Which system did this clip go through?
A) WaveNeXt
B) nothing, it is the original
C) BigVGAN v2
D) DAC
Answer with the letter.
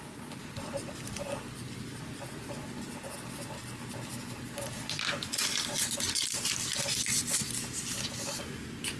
B